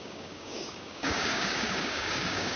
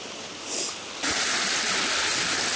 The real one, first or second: second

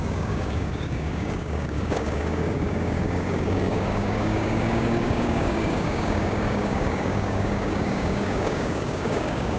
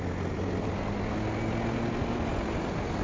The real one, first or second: second